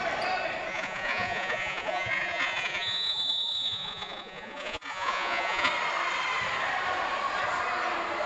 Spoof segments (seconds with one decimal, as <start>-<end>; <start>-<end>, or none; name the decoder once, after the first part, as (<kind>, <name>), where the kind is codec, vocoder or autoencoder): 0.7-5.7 (vocoder, Vocos)